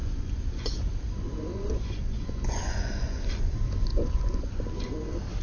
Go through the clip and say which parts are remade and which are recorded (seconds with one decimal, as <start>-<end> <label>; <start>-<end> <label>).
0.0-1.0 remade; 1.0-1.5 recorded; 1.5-3.2 remade; 3.2-3.9 recorded; 3.9-4.6 remade; 4.6-5.4 recorded